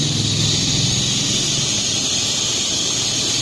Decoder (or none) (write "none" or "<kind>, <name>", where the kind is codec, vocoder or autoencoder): none